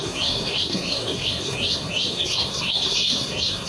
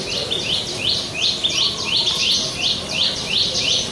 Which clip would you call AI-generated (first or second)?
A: first